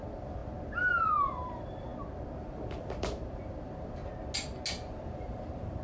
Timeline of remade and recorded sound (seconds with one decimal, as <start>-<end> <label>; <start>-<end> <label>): 0.0-0.4 remade; 0.4-1.2 recorded; 1.2-1.9 remade; 1.9-2.4 recorded; 2.4-4.0 remade; 4.0-4.9 recorded; 4.9-5.8 remade